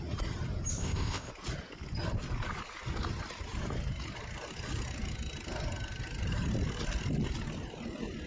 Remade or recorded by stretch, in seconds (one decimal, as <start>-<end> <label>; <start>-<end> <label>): 0.0-0.7 recorded; 0.7-1.3 remade; 1.3-8.3 recorded